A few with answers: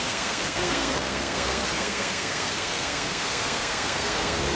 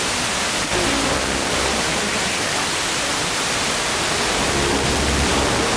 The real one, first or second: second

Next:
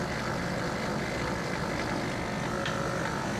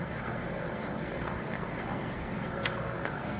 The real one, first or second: first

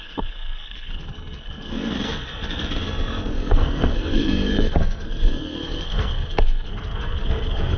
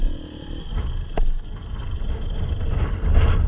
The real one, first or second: second